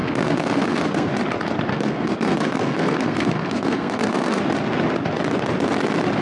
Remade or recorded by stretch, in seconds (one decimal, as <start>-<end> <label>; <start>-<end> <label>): 0.0-1.1 remade; 1.1-1.7 recorded; 1.7-4.4 remade; 4.4-6.2 recorded